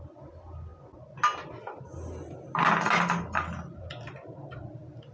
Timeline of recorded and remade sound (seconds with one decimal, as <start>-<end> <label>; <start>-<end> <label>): 0.0-5.1 recorded